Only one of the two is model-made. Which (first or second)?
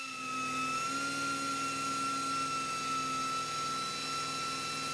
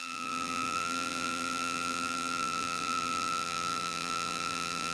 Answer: second